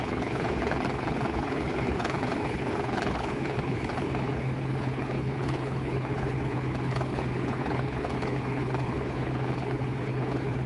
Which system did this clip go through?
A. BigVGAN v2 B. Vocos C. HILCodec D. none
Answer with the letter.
C